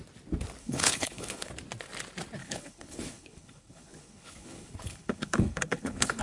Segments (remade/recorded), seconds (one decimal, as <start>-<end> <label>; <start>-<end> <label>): 0.0-0.6 recorded; 0.6-1.5 remade; 1.5-2.4 recorded; 2.4-6.2 remade